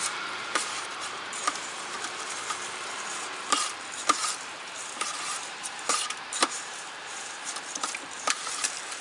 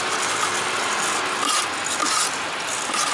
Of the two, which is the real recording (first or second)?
second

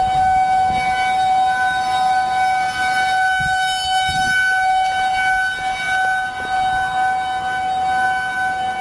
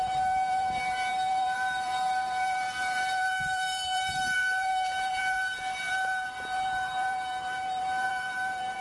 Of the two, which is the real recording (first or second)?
first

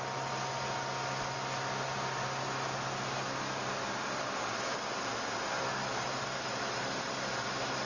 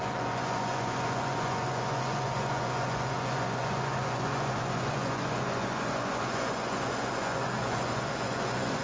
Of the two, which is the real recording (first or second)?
first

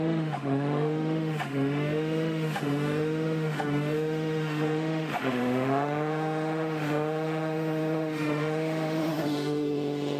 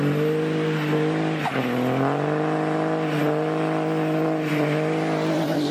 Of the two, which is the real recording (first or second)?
second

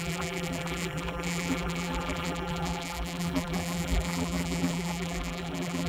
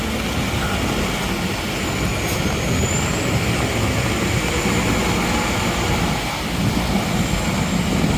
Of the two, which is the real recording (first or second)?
second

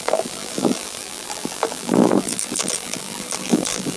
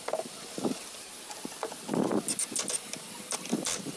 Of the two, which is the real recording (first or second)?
second